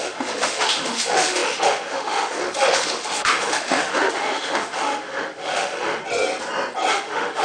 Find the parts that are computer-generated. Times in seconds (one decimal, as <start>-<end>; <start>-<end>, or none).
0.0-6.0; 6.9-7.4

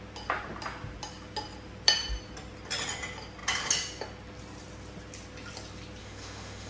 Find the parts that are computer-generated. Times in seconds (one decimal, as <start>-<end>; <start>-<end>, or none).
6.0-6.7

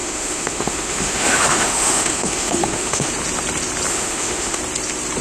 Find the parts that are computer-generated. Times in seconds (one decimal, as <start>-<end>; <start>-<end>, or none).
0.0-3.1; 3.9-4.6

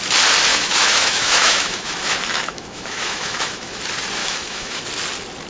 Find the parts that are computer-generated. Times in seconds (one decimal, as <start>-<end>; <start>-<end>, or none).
0.5-3.8; 4.2-4.8

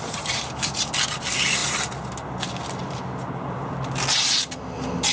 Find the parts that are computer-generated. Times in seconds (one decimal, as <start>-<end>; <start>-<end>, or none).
none

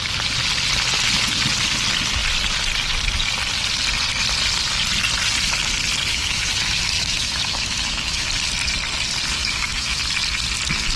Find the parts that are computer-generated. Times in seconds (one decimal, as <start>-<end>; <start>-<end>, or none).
6.1-8.3; 9.4-10.0